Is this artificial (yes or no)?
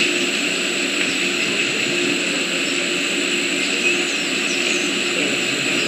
no